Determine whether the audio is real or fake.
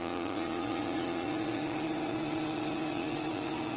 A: fake